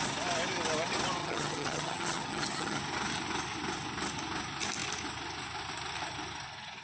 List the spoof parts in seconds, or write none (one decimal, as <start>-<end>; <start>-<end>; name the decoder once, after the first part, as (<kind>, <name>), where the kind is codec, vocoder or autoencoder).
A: 1.2-2.8 (vocoder, HiFi-GAN)